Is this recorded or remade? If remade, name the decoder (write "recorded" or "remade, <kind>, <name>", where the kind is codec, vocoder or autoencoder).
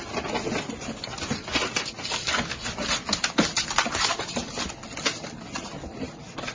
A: recorded